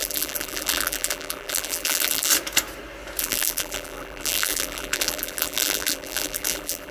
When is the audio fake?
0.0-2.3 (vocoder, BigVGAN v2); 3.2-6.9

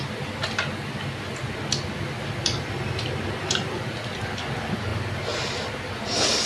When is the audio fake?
4.9-6.5 (vocoder, BigVGAN v2)

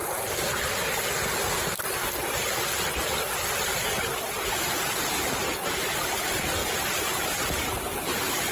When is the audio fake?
6.6-7.1 (vocoder, BigVGAN v2)

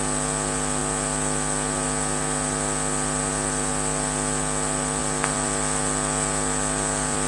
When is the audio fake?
5.0-7.3 (vocoder, BigVGAN v2)

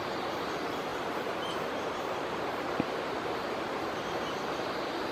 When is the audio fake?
0.0-5.1 (vocoder, BigVGAN v2)

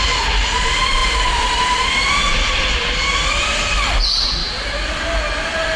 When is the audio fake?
1.0-4.0 (vocoder, BigVGAN v2); 4.4-5.0

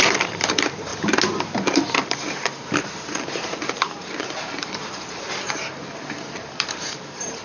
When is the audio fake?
0.0-0.9 (vocoder, BigVGAN v2); 2.0-7.4

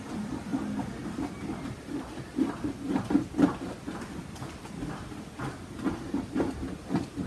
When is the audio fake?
none